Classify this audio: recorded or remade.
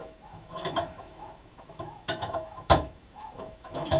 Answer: remade